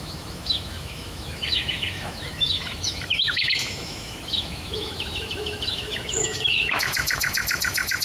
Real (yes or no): no